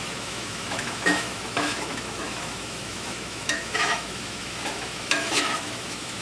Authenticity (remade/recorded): remade